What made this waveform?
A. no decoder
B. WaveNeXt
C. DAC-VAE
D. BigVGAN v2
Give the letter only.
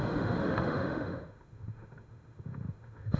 C